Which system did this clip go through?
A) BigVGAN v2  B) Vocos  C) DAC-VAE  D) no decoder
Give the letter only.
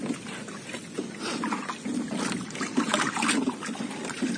D